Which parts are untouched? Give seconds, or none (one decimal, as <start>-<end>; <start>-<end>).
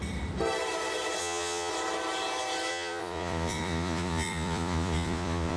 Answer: 0.0-1.2; 1.7-2.7